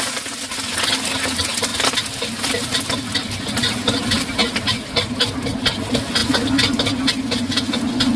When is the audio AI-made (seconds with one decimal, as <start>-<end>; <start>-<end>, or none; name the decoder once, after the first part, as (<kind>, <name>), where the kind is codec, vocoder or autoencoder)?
none